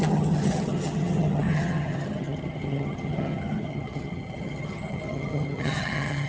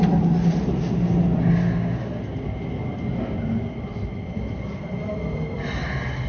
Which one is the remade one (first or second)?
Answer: first